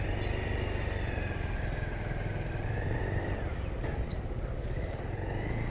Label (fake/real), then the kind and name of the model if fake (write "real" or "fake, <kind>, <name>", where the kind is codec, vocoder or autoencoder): real